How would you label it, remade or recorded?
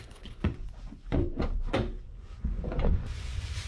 remade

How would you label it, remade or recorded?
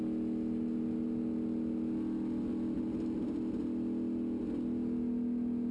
recorded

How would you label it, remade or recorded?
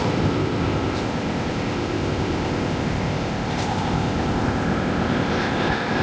remade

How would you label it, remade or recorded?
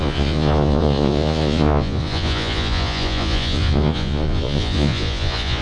remade